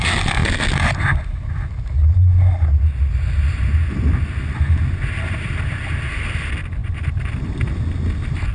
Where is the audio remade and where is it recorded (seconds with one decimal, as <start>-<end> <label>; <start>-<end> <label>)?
0.0-8.5 recorded